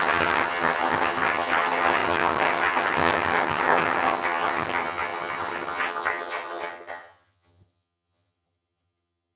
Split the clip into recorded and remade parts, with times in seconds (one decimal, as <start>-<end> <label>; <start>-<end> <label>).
0.0-9.4 remade